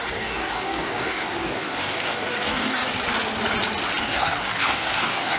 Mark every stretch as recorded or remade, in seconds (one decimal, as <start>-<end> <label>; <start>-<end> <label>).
0.0-2.8 remade; 2.8-4.0 recorded; 4.0-5.4 remade